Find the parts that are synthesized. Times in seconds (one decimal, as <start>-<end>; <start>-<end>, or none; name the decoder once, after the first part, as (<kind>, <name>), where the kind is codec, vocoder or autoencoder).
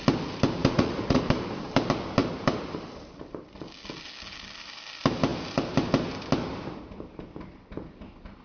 0.6-1.2 (vocoder, Vocos)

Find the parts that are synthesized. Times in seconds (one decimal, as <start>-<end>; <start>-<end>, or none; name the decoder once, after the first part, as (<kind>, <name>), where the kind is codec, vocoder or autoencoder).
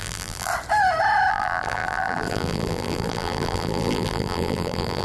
0.0-0.5 (vocoder, BigVGAN v2); 1.3-5.0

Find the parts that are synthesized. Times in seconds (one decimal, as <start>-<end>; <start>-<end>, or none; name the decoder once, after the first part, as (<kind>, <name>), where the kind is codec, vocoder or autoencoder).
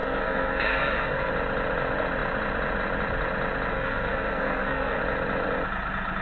0.0-1.3 (codec, SNAC); 3.7-5.0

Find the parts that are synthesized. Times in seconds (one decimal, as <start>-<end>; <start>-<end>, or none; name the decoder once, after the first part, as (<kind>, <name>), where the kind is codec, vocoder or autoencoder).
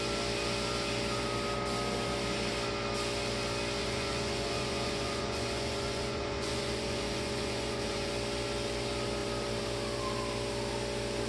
3.8-8.1 (vocoder, Vocos)